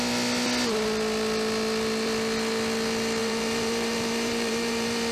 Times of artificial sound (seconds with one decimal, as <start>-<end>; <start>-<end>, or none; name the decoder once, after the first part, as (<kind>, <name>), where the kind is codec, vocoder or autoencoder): 3.2-5.1 (vocoder, BigVGAN v2)